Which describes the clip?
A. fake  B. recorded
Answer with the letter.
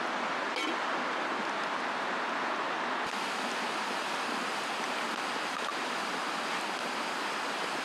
B